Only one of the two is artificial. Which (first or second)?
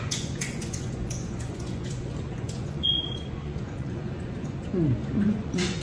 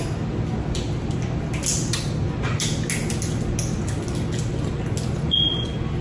first